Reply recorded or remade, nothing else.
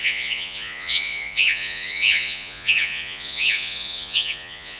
remade